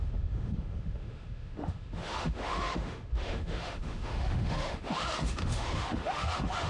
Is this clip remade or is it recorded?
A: remade